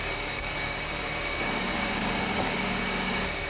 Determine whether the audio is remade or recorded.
remade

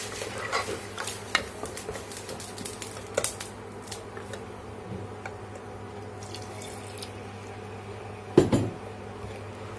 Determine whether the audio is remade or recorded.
recorded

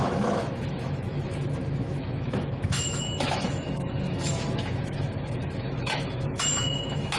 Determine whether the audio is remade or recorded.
remade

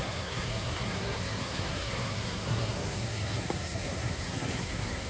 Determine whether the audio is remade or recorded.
remade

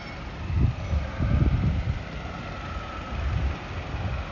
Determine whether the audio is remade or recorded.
recorded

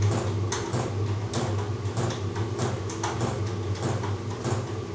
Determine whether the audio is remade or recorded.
recorded